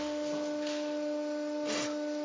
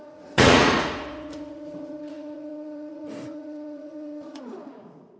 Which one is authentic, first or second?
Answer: first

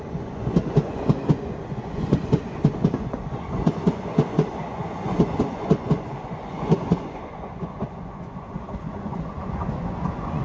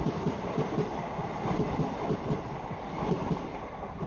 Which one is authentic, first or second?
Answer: second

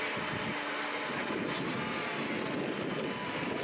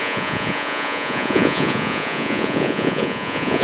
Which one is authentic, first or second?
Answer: first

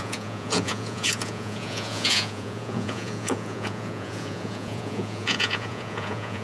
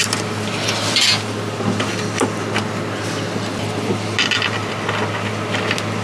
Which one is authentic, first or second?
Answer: second